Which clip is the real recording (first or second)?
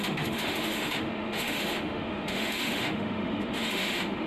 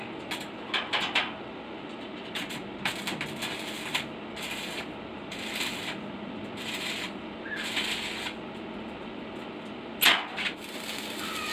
second